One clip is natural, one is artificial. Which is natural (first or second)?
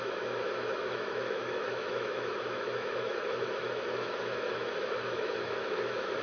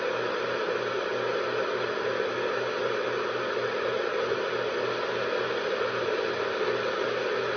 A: second